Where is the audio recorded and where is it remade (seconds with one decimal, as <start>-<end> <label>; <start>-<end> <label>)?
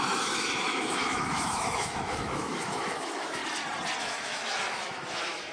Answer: 0.0-3.4 remade; 3.4-4.0 recorded; 4.0-5.5 remade